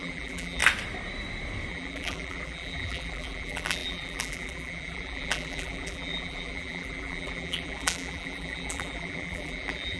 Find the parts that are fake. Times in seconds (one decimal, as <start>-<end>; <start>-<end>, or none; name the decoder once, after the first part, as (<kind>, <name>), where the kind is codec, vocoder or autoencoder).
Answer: 0.0-0.6 (vocoder, BigVGAN v2); 1.7-10.0